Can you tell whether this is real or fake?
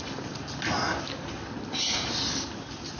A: real